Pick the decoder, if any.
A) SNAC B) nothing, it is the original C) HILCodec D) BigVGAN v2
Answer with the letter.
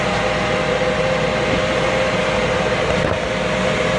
B